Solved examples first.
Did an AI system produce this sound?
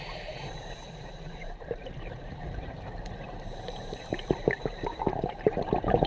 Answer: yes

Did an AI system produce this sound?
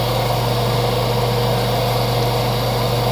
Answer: no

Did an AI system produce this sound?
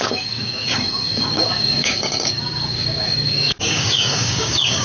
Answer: yes